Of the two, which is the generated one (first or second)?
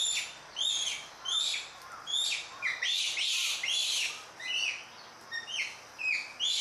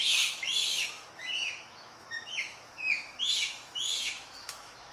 second